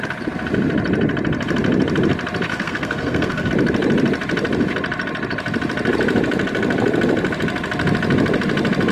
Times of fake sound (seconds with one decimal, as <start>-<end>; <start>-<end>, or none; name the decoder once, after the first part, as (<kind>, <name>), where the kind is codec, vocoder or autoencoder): 2.5-3.5 (codec, SNAC)

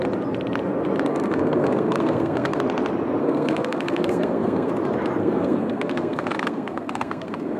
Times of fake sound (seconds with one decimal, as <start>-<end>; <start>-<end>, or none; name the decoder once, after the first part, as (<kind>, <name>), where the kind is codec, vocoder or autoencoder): 1.1-2.6 (codec, SNAC); 3.2-4.7; 5.2-7.6